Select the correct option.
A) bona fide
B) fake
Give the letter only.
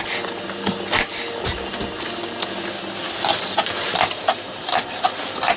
A